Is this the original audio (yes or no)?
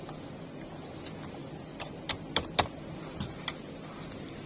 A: yes